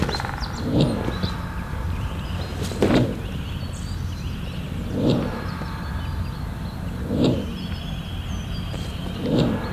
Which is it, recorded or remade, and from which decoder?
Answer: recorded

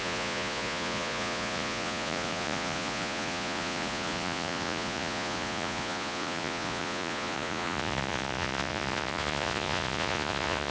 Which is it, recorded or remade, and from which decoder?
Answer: remade, vocoder, Vocos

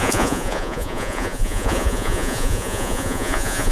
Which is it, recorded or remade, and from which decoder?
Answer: remade, vocoder, Vocos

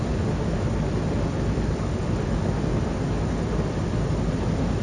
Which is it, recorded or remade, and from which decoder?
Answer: recorded